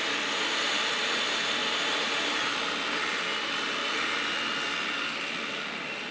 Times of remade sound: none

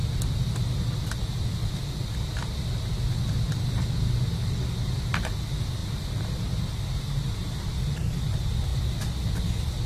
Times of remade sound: none

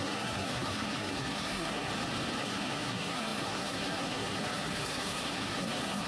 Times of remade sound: 0.0-1.9 (codec, SNAC); 2.4-6.1

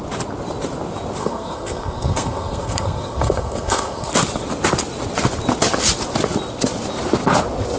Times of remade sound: 1.2-4.1 (codec, SNAC)

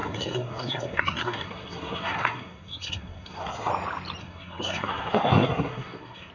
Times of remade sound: 0.0-3.7 (codec, SNAC); 4.2-6.3

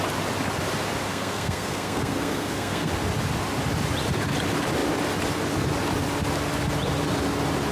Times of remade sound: 1.1-2.9 (codec, SNAC)